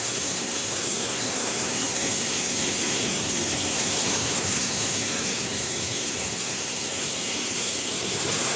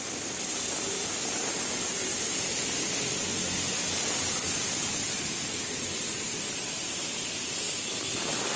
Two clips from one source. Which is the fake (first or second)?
first